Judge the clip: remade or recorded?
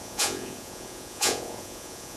remade